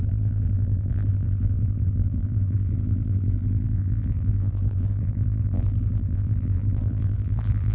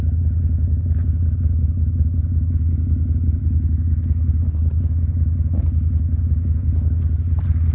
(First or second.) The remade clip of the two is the first